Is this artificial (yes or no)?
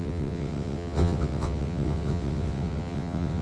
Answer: yes